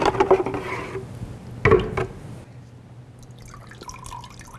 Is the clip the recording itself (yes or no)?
yes